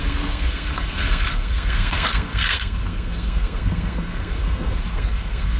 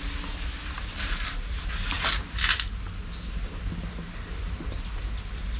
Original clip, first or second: second